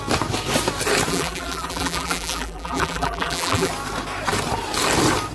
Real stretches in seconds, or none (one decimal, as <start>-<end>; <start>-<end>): 0.0-1.1; 3.7-5.3